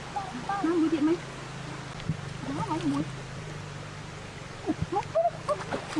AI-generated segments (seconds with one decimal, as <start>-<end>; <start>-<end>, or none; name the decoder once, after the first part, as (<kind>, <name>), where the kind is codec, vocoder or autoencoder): none